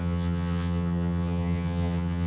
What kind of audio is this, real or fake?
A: fake